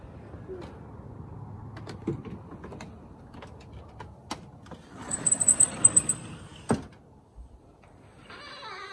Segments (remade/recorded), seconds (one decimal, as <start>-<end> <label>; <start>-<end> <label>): 0.0-8.9 recorded